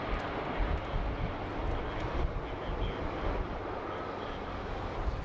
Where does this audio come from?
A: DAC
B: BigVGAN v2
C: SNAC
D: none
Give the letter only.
D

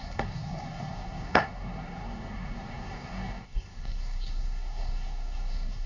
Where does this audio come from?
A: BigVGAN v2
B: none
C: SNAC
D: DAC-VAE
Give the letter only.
C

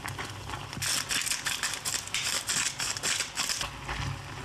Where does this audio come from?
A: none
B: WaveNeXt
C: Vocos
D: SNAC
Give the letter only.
A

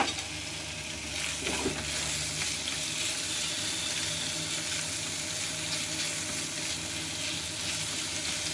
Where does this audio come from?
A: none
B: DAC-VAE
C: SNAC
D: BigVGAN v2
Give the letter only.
A